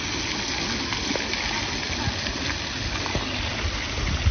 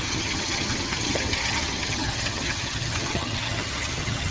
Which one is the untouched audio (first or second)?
first